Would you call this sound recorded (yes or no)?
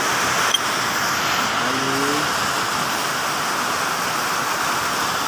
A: yes